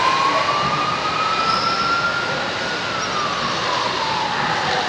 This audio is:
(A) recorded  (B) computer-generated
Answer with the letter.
A